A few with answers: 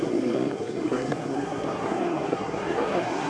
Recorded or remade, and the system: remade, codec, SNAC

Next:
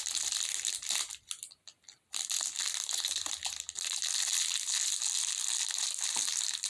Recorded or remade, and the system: recorded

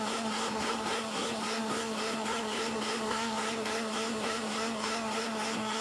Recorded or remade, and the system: remade, codec, SNAC